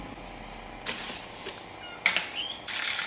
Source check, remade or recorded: recorded